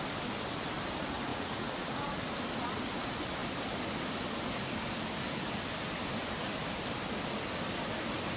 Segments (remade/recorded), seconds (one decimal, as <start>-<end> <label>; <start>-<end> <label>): 0.0-1.3 recorded; 1.3-2.2 remade; 2.2-8.4 recorded